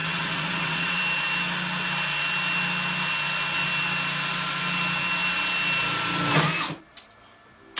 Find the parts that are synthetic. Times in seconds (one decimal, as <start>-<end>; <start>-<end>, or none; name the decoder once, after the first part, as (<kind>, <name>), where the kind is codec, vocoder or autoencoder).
0.0-1.0 (vocoder, WaveNeXt)